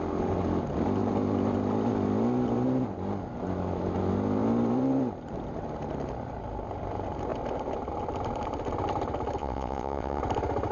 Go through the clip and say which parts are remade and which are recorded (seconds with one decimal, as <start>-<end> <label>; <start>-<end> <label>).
0.0-9.4 recorded; 9.4-10.2 remade; 10.2-10.7 recorded